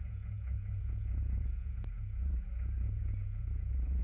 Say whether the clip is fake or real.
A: fake